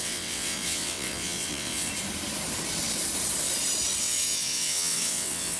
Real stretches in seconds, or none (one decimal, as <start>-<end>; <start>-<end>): 1.9-4.0